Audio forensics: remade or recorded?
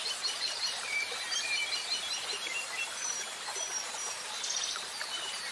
remade